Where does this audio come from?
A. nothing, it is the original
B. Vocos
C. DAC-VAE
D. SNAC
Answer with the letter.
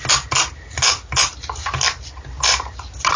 A